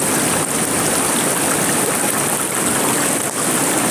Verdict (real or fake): real